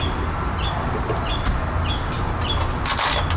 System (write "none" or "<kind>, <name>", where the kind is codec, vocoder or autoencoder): none